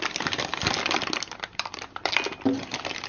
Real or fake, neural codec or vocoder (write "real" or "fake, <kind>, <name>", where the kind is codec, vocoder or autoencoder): real